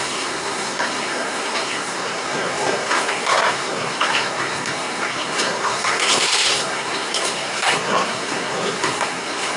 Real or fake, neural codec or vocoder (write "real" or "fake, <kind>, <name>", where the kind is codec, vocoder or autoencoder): fake, codec, SNAC